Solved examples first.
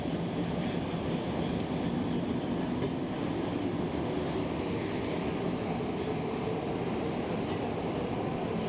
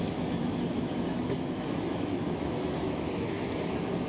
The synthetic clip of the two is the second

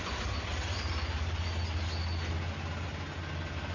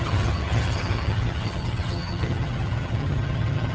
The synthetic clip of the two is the second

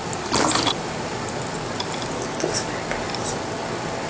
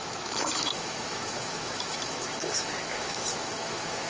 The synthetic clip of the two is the second